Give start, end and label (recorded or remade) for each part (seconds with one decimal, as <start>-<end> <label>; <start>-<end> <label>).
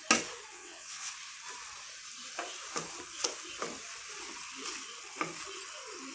0.0-0.5 recorded; 0.5-1.1 remade; 1.1-6.1 recorded